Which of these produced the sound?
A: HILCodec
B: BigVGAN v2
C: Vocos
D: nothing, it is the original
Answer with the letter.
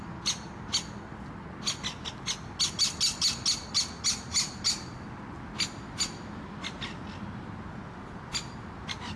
D